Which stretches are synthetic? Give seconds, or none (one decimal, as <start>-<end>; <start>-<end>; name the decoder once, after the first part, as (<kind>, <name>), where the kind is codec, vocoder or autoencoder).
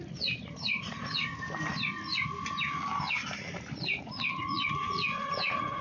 0.0-1.3 (vocoder, Vocos); 4.0-5.8